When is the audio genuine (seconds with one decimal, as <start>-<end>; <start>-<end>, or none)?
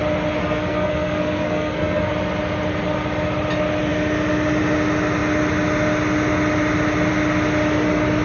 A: 0.0-0.4; 2.1-8.2